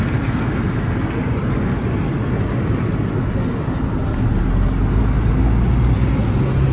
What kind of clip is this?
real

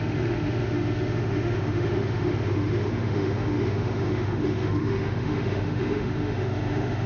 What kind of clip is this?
fake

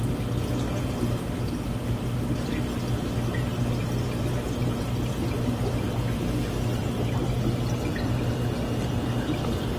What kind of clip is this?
real